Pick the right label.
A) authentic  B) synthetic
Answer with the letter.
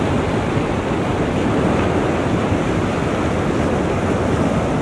A